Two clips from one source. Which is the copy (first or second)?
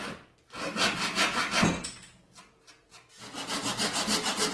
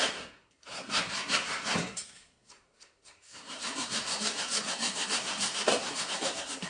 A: second